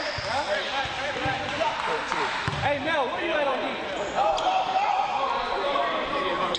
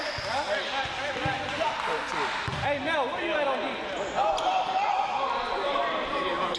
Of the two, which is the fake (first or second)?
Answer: first